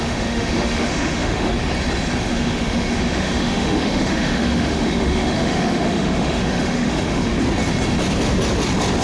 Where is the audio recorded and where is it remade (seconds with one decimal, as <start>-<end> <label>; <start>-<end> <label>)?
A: 0.0-1.5 remade; 1.5-2.2 recorded; 2.2-7.3 remade; 7.3-9.0 recorded